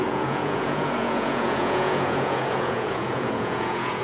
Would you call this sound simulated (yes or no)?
yes